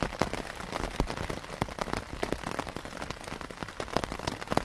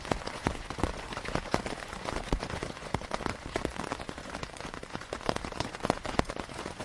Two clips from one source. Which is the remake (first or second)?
second